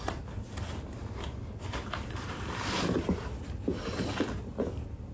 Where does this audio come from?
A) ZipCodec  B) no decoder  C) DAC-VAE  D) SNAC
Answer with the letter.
B